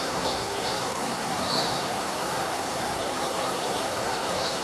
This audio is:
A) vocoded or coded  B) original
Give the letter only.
A